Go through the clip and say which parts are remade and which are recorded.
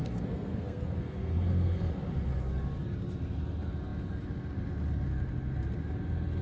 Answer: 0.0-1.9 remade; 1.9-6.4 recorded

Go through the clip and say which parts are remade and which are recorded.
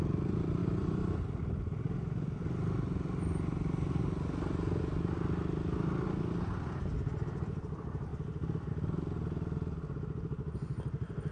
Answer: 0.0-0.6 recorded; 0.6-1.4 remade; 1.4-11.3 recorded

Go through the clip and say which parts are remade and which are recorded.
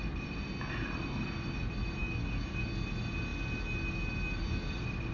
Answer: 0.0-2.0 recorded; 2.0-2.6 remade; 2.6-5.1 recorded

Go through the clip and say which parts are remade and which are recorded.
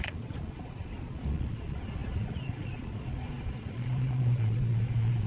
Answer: 0.0-5.3 remade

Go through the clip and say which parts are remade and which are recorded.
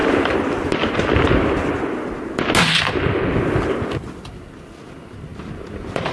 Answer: 0.0-6.1 recorded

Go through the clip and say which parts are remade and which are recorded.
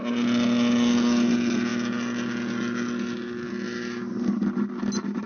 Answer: 0.0-5.3 recorded